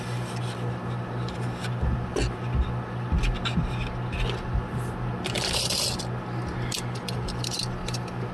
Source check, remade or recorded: recorded